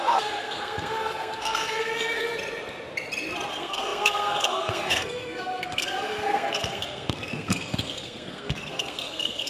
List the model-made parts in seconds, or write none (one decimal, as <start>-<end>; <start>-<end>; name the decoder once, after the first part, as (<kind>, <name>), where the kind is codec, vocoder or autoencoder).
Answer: 0.0-2.3 (codec, SNAC); 3.5-9.5